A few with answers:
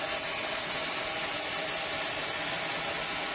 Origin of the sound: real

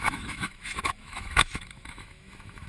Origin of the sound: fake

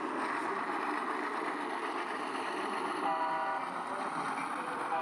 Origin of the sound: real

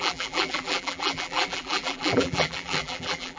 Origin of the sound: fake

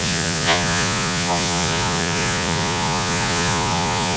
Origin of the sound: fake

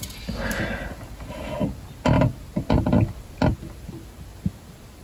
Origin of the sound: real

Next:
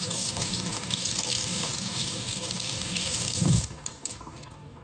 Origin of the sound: fake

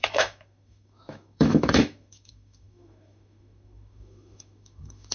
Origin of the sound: fake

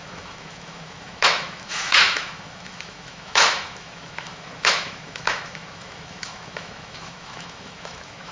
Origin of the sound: fake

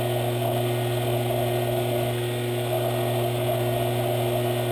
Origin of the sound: real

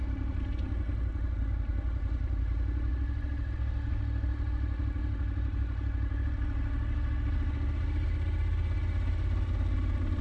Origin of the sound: real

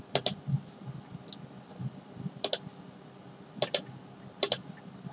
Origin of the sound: real